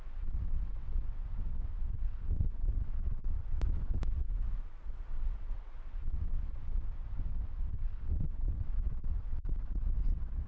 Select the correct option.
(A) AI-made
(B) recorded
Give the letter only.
A